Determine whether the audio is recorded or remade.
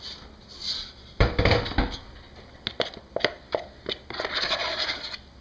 recorded